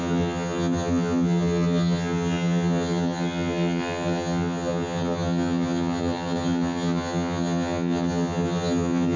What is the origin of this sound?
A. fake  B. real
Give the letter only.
A